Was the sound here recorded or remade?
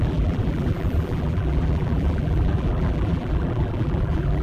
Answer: remade